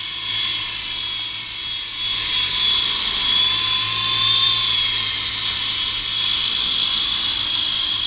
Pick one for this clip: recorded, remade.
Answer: recorded